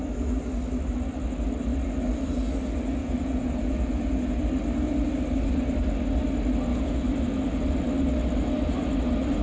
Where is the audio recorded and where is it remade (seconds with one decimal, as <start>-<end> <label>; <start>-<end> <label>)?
0.0-3.0 recorded; 3.0-4.4 remade; 4.4-6.7 recorded; 6.7-7.2 remade; 7.2-9.4 recorded